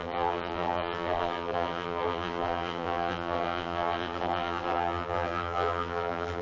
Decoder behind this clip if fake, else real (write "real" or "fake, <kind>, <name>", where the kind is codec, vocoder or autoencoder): fake, vocoder, BigVGAN v2